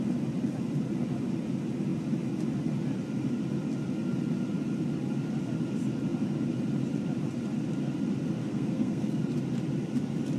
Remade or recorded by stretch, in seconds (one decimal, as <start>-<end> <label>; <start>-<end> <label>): 0.0-8.4 recorded; 8.4-9.2 remade; 9.2-10.4 recorded